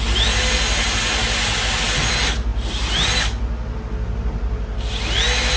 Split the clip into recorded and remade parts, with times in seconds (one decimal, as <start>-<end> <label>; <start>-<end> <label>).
0.0-5.6 recorded